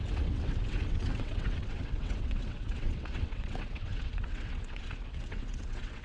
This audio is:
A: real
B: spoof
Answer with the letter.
B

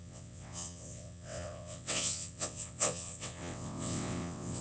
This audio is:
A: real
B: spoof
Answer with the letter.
B